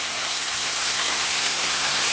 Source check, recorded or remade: remade